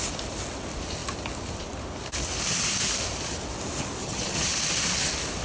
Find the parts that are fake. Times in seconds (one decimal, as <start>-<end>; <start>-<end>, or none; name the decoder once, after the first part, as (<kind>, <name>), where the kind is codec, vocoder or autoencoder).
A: 4.0-4.5 (vocoder, HiFi-GAN)